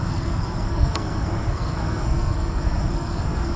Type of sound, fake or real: fake